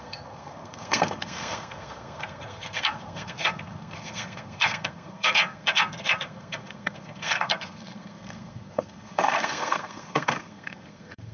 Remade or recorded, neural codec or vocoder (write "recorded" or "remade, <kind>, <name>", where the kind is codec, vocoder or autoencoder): remade, codec, SNAC